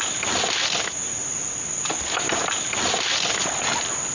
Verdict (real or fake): real